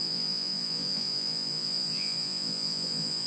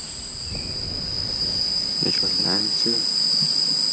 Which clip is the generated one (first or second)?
first